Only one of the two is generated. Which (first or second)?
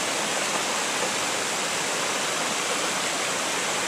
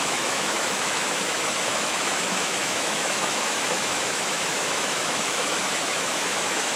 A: second